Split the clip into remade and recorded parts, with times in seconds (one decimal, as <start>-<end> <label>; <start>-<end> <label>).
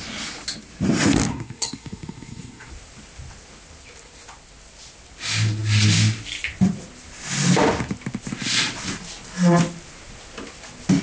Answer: 0.0-1.3 recorded; 1.3-2.7 remade; 2.7-11.0 recorded